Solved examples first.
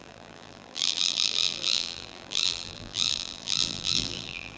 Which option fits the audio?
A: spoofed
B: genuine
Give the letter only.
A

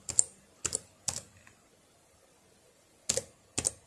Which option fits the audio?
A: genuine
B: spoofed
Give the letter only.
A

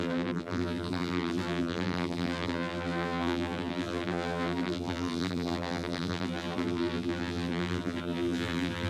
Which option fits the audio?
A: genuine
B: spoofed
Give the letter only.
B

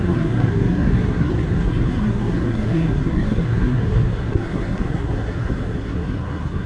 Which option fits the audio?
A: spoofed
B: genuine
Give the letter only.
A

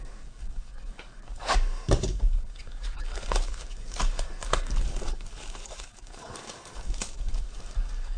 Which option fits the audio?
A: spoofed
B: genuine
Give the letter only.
A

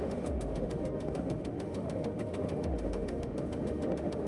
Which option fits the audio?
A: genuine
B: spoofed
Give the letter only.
B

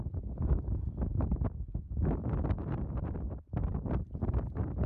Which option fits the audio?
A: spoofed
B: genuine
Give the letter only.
B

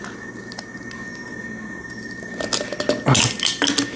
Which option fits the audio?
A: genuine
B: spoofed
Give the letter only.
A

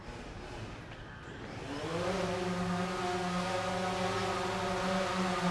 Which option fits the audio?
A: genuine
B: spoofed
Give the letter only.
A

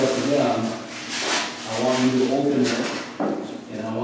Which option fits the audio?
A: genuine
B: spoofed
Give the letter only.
A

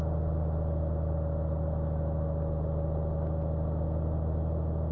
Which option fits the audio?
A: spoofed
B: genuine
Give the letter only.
B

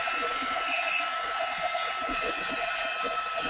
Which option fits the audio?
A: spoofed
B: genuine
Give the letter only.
B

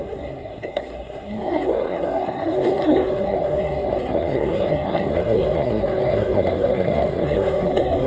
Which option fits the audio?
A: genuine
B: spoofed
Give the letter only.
B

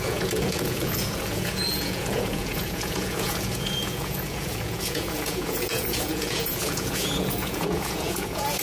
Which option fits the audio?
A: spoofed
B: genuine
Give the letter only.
A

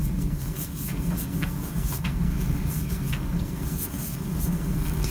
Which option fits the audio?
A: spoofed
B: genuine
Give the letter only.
A